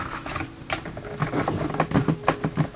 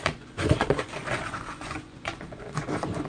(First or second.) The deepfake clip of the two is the second